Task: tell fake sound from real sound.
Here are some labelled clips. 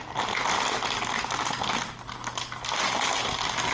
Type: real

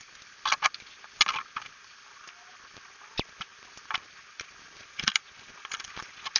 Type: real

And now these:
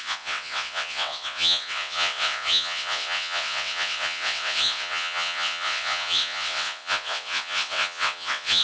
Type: fake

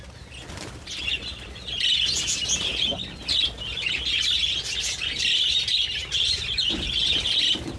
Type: real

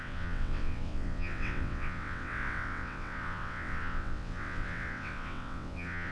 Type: fake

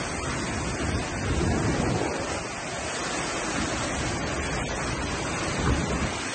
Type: real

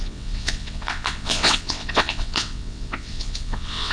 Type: fake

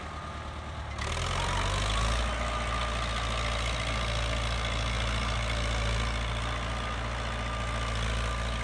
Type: real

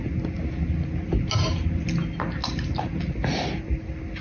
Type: real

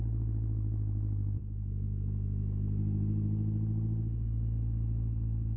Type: real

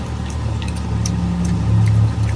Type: real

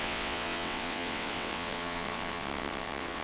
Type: fake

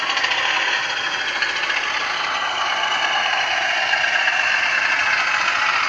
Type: real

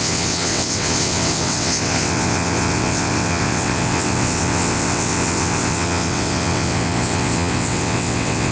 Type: fake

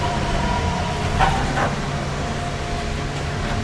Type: real